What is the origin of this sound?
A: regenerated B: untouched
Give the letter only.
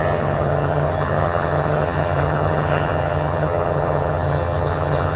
A